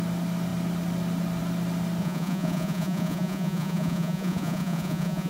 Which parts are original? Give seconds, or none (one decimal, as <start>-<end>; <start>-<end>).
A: 0.0-2.0